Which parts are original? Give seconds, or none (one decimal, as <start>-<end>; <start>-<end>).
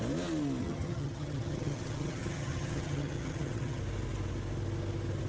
0.0-0.6; 3.8-5.3